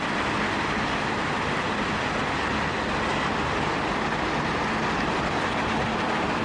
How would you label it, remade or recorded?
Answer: recorded